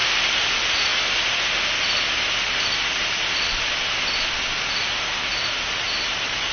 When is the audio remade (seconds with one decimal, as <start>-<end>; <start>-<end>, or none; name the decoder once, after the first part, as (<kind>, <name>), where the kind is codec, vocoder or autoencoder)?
none